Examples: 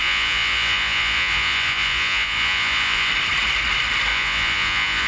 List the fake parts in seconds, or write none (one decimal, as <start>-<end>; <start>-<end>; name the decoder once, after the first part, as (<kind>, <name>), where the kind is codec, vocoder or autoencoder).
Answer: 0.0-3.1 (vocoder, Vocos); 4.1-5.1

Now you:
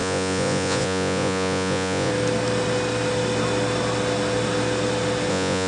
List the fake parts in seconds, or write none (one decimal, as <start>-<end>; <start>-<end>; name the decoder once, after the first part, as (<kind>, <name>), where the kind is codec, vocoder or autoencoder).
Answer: 0.0-2.1 (vocoder, Vocos); 5.3-5.7

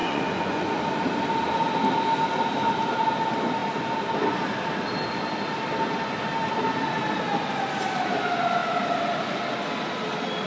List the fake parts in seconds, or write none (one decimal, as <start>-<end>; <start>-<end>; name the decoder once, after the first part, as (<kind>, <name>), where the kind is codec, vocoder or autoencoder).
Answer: 0.0-0.7 (vocoder, Vocos)

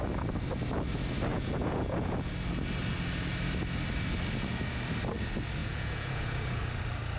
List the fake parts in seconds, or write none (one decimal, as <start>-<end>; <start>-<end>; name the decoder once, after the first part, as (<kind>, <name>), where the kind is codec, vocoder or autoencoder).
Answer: 1.3-2.3 (vocoder, Vocos); 5.6-6.6

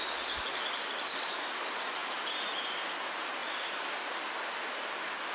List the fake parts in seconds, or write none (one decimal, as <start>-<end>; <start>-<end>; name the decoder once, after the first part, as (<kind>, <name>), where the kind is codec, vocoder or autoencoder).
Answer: none

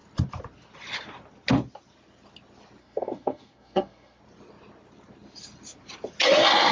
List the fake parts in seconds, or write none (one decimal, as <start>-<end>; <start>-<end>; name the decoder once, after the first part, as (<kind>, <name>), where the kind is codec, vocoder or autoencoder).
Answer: 2.8-4.2 (codec, SNAC)